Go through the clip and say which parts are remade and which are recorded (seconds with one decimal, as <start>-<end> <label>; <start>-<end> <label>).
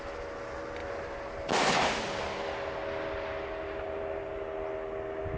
0.0-5.4 recorded